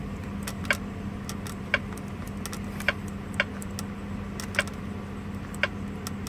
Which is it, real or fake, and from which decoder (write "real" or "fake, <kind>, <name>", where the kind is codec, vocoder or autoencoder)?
real